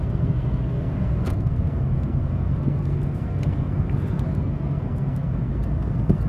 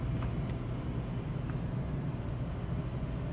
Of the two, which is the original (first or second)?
second